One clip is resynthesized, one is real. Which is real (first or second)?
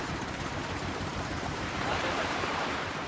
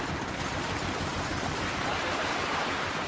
second